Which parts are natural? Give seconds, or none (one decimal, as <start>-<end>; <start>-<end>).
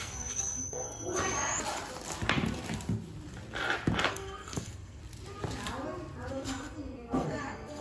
1.2-4.1; 5.0-6.3